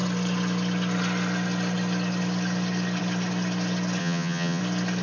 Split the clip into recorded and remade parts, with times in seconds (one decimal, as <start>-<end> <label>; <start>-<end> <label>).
0.0-4.0 recorded; 4.0-4.6 remade; 4.6-5.0 recorded